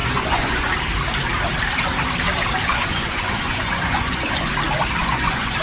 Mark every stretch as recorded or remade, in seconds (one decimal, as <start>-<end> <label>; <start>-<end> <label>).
0.0-0.7 remade; 0.7-2.7 recorded; 2.7-4.5 remade; 4.5-5.0 recorded; 5.0-5.6 remade